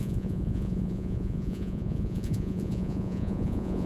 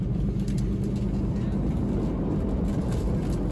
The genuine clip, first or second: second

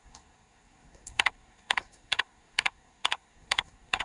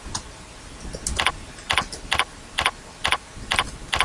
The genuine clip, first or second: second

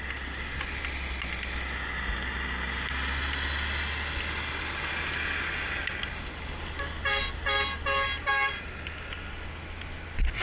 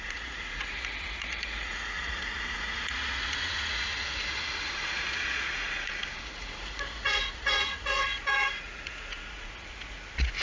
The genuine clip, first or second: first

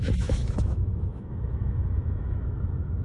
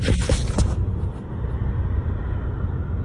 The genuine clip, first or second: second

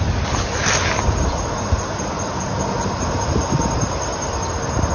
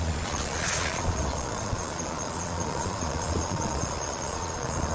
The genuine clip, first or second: first